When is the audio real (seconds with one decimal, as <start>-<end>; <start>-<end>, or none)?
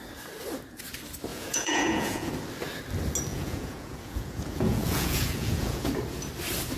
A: 0.0-1.3; 2.3-3.3; 5.9-6.8